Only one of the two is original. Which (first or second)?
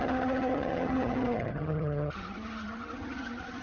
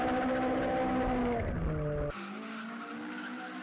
second